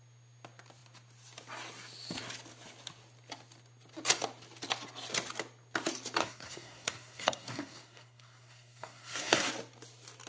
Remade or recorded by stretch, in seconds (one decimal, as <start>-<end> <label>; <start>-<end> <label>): 0.0-6.2 recorded; 6.2-9.5 remade; 9.5-10.3 recorded

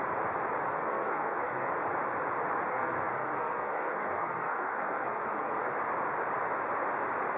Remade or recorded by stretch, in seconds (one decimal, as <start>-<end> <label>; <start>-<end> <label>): 0.0-0.7 recorded; 0.7-1.7 remade; 1.7-2.7 recorded; 2.7-5.7 remade; 5.7-7.4 recorded

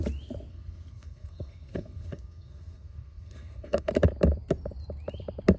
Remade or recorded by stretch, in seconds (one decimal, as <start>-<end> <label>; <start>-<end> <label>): 0.0-0.5 recorded; 0.5-3.9 remade; 3.9-5.6 recorded

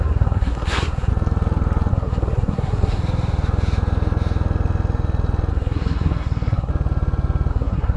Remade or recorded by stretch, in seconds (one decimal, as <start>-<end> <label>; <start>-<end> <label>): 0.0-1.1 remade; 1.1-1.9 recorded; 1.9-3.0 remade; 3.0-5.5 recorded; 5.5-6.7 remade; 6.7-7.5 recorded; 7.5-8.0 remade